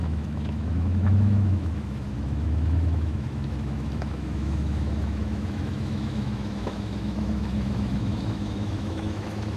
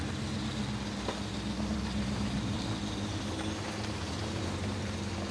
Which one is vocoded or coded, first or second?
first